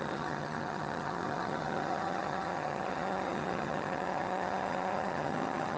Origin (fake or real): fake